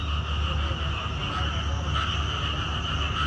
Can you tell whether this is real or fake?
real